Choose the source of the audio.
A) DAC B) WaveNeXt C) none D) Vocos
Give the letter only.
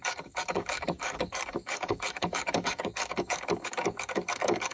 A